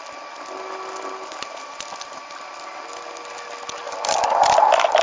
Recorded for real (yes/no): yes